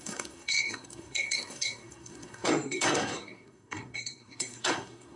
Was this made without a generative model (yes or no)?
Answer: no